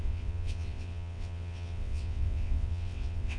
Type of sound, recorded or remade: remade